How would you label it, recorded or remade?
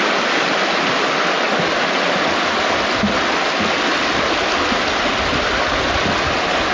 recorded